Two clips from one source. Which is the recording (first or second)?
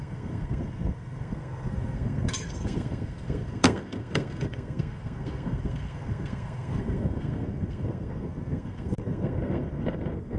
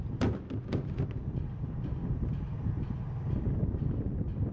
second